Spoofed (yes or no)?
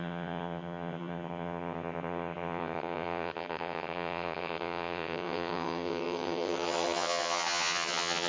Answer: yes